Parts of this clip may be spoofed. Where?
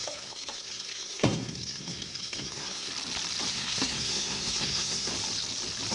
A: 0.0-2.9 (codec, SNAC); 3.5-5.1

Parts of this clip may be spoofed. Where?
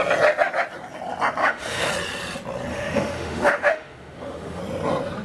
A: 1.4-1.9 (autoencoder, DAC-VAE); 2.7-4.6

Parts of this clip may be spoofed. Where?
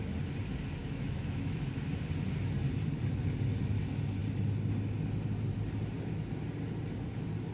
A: 0.8-1.6 (autoencoder, DAC-VAE)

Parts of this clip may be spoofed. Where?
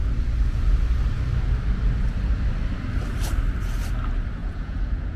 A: 4.4-5.2 (vocoder, Vocos)